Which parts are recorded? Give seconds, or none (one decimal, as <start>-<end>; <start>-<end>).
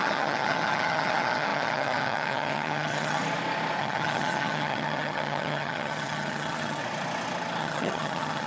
3.2-3.8; 6.8-7.6